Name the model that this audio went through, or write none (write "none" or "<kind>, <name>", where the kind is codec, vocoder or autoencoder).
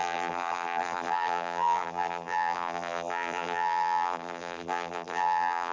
vocoder, BigVGAN v2